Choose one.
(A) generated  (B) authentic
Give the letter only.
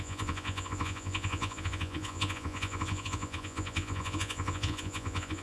A